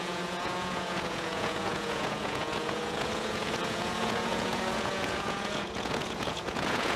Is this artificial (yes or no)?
yes